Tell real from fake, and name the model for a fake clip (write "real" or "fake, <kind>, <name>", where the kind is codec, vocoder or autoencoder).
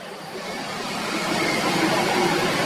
fake, vocoder, BigVGAN v2